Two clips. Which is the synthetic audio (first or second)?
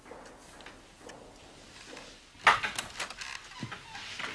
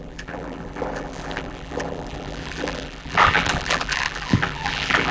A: second